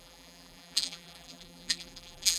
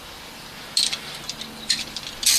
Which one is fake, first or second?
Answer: first